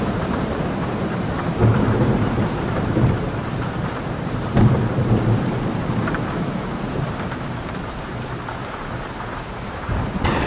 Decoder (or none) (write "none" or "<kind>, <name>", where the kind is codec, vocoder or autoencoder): vocoder, BigVGAN v2